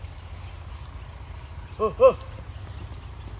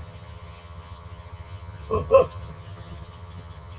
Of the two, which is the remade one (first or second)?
second